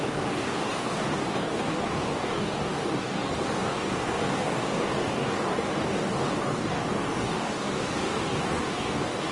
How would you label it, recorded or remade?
remade